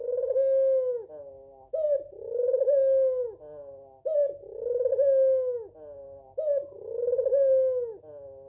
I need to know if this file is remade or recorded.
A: recorded